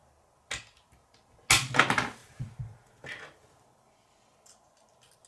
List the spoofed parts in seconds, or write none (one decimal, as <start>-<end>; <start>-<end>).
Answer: 2.2-4.2